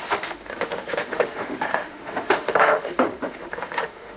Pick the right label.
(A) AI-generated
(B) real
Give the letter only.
A